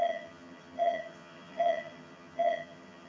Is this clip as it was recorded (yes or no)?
no